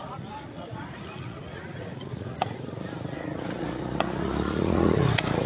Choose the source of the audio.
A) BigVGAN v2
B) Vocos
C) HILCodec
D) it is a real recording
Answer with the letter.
B